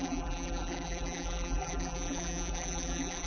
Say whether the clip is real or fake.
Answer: fake